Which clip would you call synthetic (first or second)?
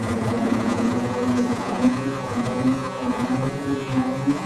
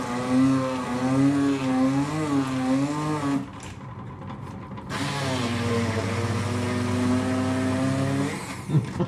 first